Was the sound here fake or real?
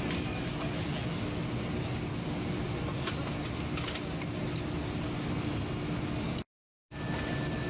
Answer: real